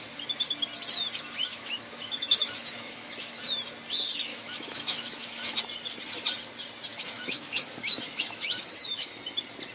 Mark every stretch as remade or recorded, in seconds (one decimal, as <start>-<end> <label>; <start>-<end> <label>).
0.0-1.5 recorded; 1.5-3.4 remade; 3.4-4.3 recorded; 4.3-5.6 remade; 5.6-6.9 recorded; 6.9-9.2 remade; 9.2-9.7 recorded

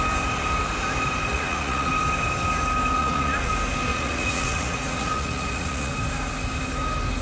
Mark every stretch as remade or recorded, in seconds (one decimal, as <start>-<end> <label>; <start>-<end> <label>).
0.0-1.3 recorded; 1.3-1.9 remade; 1.9-3.0 recorded; 3.0-3.5 remade; 3.5-3.9 recorded; 3.9-5.9 remade; 5.9-7.2 recorded

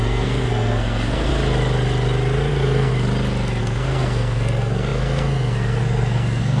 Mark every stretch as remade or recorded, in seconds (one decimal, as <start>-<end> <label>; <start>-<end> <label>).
0.0-1.3 remade; 1.3-2.5 recorded; 2.5-2.9 remade; 2.9-3.6 recorded; 3.6-6.6 remade

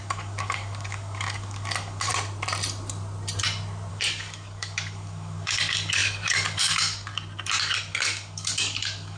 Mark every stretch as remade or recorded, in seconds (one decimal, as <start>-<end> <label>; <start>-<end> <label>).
0.0-2.1 remade; 2.1-3.9 recorded; 3.9-7.1 remade; 7.1-7.9 recorded; 7.9-9.2 remade

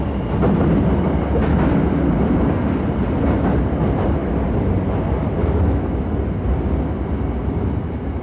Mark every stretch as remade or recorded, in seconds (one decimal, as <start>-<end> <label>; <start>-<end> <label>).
0.0-8.2 recorded